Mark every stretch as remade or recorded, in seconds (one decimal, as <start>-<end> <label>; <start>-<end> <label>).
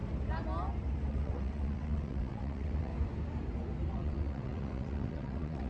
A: 0.0-1.1 recorded; 1.1-2.9 remade; 2.9-3.9 recorded; 3.9-5.7 remade